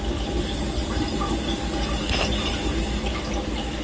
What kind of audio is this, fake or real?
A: real